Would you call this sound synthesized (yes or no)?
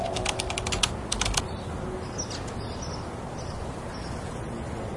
no